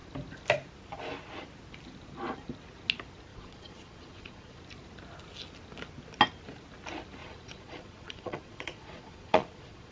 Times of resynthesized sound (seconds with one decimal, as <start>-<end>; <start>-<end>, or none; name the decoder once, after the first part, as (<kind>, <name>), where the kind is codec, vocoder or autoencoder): 3.3-4.6 (vocoder, Vocos); 7.2-9.9